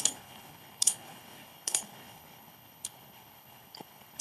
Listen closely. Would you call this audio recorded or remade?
remade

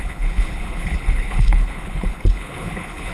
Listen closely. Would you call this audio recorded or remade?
remade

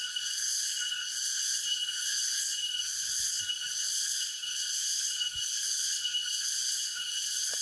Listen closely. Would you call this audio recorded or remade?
remade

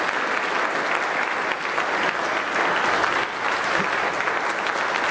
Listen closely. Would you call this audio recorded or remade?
recorded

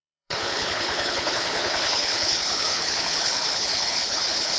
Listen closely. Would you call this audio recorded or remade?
remade